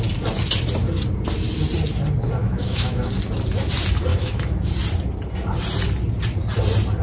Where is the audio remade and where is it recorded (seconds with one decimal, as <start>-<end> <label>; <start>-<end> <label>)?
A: 0.0-2.4 recorded; 2.4-3.1 remade; 3.1-4.1 recorded; 4.1-4.7 remade; 4.7-7.0 recorded

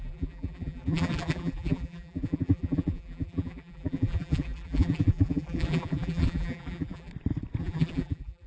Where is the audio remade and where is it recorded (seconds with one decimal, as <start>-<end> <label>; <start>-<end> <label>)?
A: 0.0-7.1 remade; 7.1-7.6 recorded; 7.6-8.5 remade

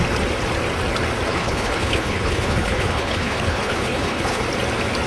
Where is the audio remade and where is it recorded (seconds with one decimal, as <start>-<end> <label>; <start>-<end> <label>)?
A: 0.0-1.3 recorded; 1.3-4.4 remade; 4.4-5.1 recorded

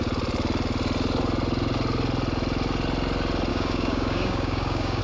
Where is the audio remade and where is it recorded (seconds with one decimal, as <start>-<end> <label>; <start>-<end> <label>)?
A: 0.0-3.5 recorded; 3.5-5.0 remade

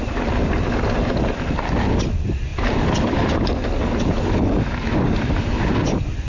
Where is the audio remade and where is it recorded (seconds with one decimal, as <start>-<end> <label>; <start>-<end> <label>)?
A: 0.0-6.3 recorded

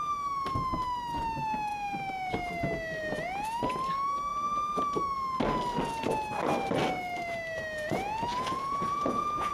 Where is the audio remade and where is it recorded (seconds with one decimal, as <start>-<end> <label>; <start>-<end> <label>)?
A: 0.0-8.3 recorded; 8.3-9.5 remade